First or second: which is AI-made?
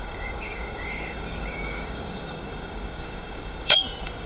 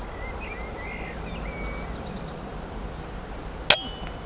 first